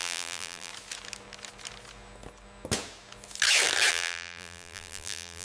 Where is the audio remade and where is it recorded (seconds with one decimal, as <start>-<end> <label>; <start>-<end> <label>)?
0.0-0.7 remade; 0.7-3.9 recorded; 3.9-5.4 remade

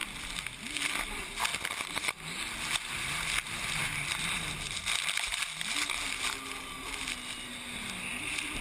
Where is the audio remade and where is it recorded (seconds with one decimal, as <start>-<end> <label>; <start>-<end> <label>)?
0.0-1.5 recorded; 1.5-2.1 remade; 2.1-8.6 recorded

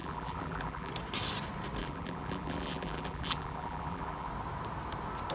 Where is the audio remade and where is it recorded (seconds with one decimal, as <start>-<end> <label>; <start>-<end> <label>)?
0.0-0.9 remade; 0.9-1.8 recorded; 1.8-4.3 remade; 4.3-5.3 recorded

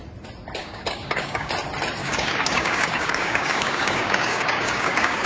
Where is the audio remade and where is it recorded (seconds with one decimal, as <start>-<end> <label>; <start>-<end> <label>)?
0.0-0.6 recorded; 0.6-1.5 remade; 1.5-2.0 recorded; 2.0-5.3 remade

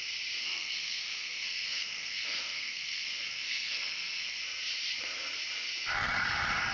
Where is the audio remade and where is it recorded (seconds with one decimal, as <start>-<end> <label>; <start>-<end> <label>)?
0.0-0.4 recorded; 0.4-4.4 remade; 4.4-6.7 recorded